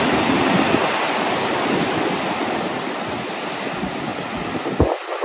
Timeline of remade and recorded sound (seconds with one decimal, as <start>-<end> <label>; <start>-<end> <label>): 0.0-5.2 recorded